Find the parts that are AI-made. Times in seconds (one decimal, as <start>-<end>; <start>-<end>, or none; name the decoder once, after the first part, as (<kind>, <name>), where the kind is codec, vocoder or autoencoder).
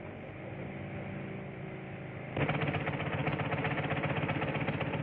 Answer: none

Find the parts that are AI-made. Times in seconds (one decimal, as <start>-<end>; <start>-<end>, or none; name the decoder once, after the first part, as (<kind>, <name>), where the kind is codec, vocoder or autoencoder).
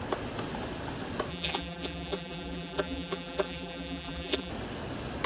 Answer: 1.3-4.5 (vocoder, BigVGAN v2)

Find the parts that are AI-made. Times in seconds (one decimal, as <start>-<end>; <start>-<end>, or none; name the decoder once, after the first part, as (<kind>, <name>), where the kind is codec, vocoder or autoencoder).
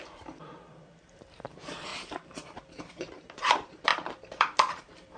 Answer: 0.0-1.9 (vocoder, BigVGAN v2); 2.7-5.2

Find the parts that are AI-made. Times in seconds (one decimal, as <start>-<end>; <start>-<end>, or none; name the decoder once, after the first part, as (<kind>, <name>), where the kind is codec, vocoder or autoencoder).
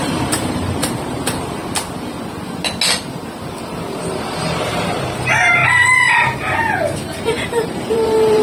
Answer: 0.0-1.6 (vocoder, BigVGAN v2); 3.7-5.6; 7.0-8.4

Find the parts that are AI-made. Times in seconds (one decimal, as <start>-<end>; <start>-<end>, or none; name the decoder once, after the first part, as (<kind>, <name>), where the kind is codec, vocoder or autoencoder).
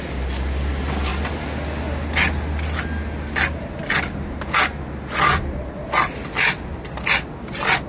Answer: none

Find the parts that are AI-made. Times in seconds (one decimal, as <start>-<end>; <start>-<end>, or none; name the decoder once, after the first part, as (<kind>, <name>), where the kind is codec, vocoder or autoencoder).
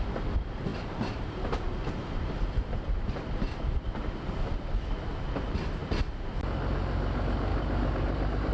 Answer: 0.7-4.2 (vocoder, BigVGAN v2); 7.5-8.5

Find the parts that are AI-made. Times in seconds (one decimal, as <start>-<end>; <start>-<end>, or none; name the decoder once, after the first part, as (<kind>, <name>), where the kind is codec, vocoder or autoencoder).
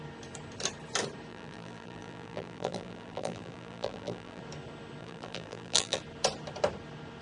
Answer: 1.3-4.4 (vocoder, BigVGAN v2); 5.0-6.0